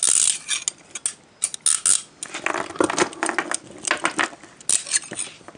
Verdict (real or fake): real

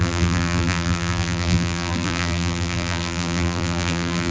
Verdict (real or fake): fake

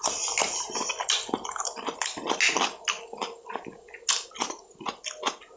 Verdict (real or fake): real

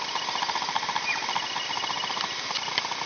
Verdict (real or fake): fake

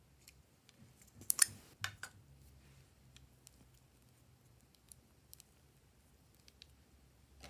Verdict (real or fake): real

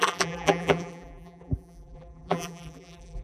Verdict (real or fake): fake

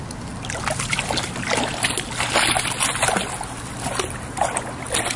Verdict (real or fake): real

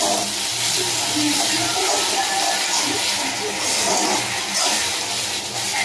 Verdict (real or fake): fake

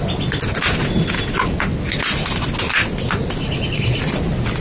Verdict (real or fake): real